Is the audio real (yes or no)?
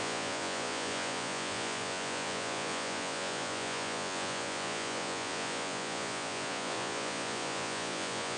no